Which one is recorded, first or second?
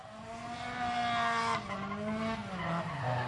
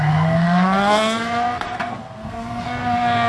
first